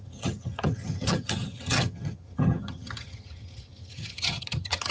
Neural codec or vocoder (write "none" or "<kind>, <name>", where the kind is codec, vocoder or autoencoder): vocoder, HiFi-GAN